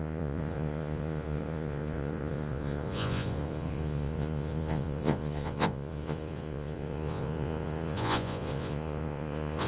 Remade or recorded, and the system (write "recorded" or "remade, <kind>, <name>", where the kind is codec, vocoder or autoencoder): remade, vocoder, Vocos